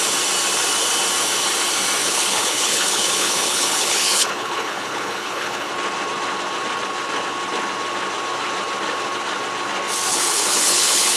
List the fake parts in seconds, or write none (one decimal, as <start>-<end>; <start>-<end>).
2.0-5.7; 10.1-11.2